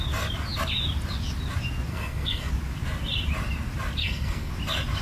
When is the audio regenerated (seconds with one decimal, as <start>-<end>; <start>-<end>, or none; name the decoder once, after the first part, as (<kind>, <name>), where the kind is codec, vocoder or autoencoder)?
1.9-2.5 (codec, SNAC); 4.0-4.5